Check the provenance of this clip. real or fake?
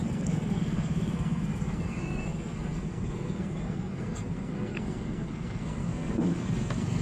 fake